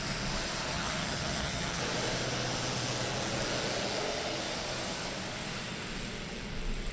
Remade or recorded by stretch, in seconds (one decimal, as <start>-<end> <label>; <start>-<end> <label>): 0.0-0.7 recorded; 0.7-1.8 remade; 1.8-6.9 recorded